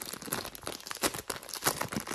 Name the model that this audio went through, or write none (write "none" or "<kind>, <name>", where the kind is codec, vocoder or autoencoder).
none